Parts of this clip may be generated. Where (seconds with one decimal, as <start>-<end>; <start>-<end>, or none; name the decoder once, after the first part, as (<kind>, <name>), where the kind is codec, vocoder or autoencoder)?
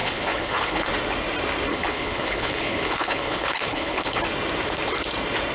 0.0-0.9 (codec, HILCodec); 1.7-4.2